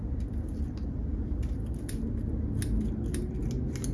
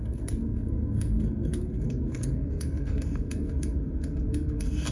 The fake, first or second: second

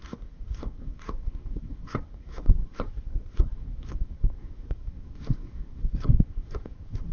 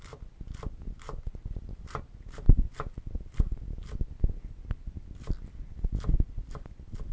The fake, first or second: first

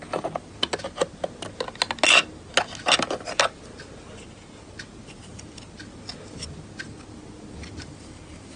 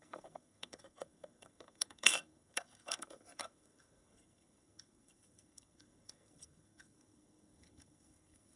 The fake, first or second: second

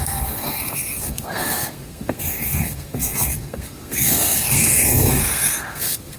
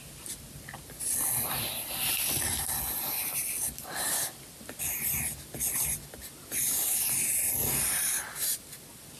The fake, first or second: first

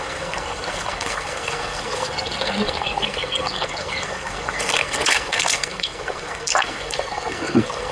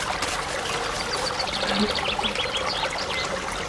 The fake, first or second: first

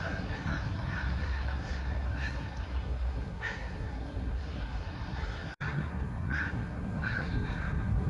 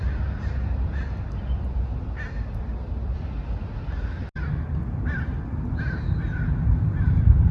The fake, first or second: first